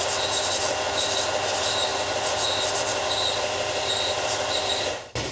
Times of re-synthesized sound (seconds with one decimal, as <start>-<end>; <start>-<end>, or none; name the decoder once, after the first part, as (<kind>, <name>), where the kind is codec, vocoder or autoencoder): none